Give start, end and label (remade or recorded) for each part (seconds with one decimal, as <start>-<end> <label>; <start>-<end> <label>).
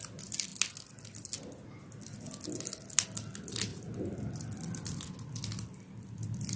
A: 0.0-6.6 recorded